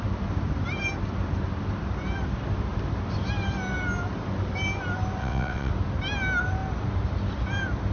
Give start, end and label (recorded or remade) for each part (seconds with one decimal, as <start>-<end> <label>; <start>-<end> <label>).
0.0-5.2 recorded; 5.2-5.7 remade; 5.7-7.9 recorded